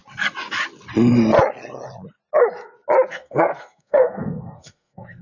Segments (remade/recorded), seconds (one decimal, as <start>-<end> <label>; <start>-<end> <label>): 0.0-3.1 recorded; 3.1-5.2 remade